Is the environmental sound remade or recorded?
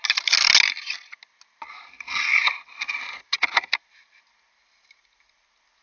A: recorded